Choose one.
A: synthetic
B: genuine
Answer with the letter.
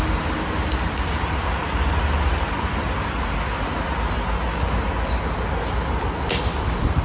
B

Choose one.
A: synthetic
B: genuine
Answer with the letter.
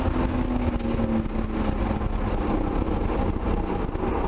B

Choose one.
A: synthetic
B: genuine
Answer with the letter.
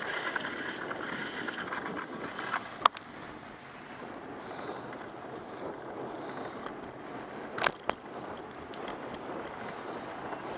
B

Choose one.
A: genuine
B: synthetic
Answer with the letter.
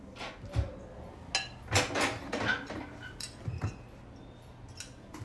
A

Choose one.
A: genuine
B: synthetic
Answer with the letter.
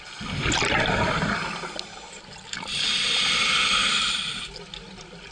A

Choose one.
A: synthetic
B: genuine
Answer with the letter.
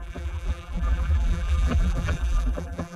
A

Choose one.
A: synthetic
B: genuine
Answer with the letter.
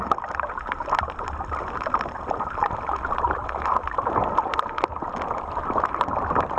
B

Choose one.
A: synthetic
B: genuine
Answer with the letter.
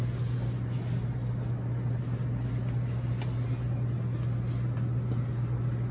B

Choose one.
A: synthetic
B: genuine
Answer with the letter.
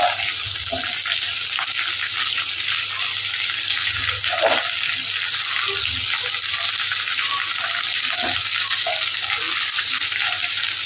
B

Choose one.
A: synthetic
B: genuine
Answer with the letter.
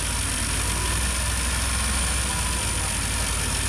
B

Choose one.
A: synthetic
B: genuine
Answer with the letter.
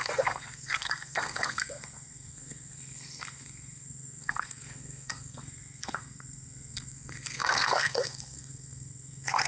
A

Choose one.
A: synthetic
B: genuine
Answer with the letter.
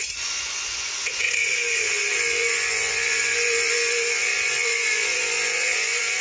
A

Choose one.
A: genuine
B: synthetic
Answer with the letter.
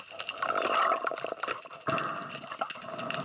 A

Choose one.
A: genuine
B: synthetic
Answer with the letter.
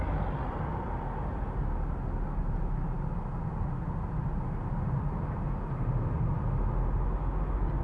A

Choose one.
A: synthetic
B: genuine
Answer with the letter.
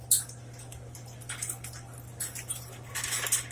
B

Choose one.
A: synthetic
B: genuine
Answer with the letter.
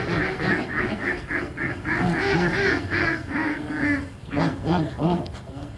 A